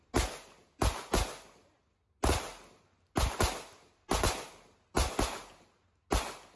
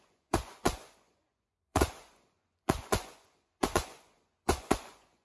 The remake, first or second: second